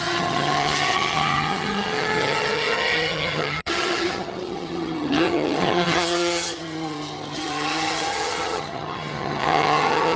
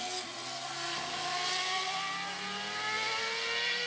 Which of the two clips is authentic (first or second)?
second